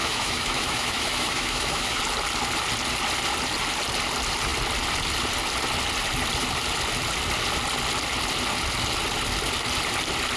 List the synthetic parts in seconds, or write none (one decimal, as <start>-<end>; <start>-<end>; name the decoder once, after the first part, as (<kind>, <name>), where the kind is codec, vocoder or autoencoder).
0.0-2.0 (autoencoder, DAC-VAE)